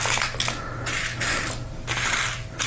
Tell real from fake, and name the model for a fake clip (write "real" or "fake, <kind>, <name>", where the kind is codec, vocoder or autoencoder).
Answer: real